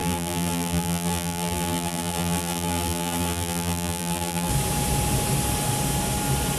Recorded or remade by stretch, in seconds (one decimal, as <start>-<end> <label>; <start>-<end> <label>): 0.0-4.5 remade; 4.5-6.6 recorded